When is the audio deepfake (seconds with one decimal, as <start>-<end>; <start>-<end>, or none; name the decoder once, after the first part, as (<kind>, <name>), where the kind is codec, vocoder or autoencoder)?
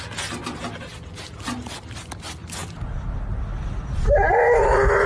none